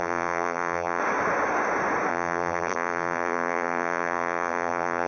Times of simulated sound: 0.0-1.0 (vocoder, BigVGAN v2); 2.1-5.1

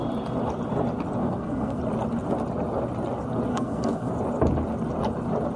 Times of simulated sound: 1.2-1.8 (codec, SNAC); 3.5-4.1

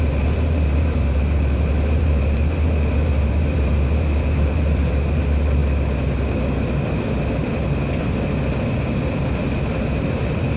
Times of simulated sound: 0.0-5.6 (vocoder, BigVGAN v2); 9.9-10.6

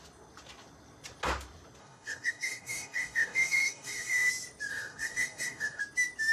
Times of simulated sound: 1.8-4.3 (codec, DAC); 4.7-5.8

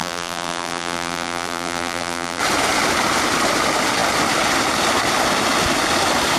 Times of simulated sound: 0.0-2.4 (vocoder, BigVGAN v2)